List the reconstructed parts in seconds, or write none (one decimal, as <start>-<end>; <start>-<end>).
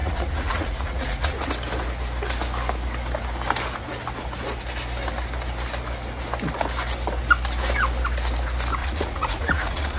0.0-1.5; 8.8-10.0